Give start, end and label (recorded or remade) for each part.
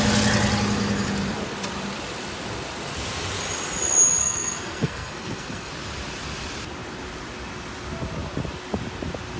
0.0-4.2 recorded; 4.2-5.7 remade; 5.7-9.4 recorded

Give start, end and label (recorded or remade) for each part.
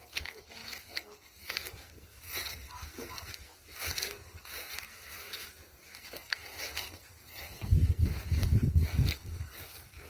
0.0-10.1 remade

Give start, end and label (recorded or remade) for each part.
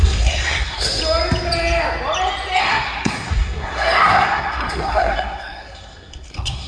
0.0-1.0 remade; 1.0-2.6 recorded; 2.6-6.7 remade